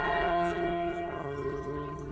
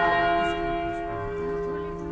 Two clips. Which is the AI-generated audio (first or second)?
first